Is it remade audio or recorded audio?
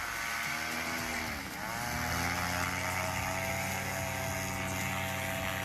recorded